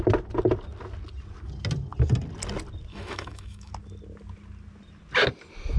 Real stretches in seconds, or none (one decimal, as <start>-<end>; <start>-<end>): 0.0-2.9; 3.7-5.8